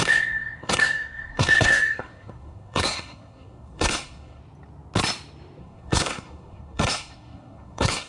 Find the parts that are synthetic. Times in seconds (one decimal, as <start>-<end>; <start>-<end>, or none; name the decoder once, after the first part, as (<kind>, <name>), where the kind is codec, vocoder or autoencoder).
0.0-4.4 (codec, SNAC); 5.6-8.1